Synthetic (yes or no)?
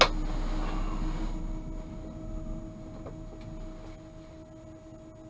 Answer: no